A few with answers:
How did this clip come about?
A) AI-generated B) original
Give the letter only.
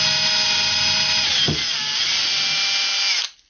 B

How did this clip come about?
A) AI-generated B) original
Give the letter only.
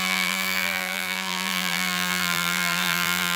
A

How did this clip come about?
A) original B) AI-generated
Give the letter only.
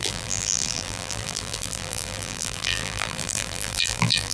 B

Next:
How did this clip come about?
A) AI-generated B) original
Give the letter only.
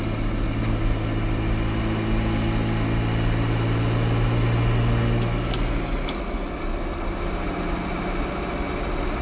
B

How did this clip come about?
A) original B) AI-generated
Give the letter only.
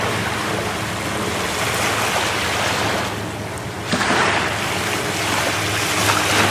A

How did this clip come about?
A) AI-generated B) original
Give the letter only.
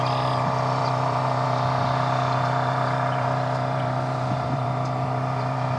A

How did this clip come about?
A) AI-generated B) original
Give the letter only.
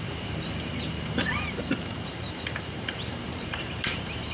A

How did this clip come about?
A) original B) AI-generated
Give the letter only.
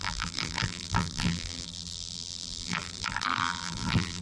B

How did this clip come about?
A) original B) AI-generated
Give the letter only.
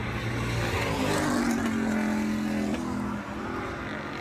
A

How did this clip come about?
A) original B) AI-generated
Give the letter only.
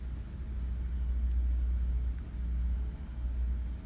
A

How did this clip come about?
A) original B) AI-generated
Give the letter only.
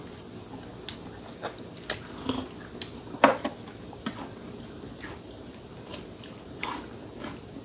A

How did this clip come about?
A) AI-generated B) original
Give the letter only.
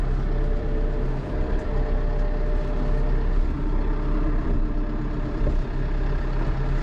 A